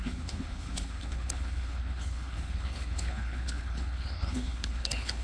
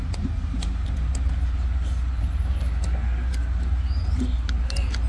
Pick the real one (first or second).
second